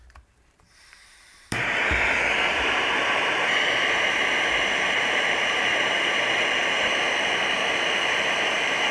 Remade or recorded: remade